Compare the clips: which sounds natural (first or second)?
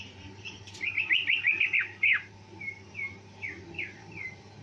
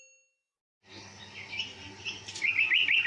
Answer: second